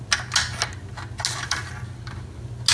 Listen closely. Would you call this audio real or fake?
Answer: real